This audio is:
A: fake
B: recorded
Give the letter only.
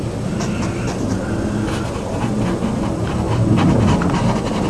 B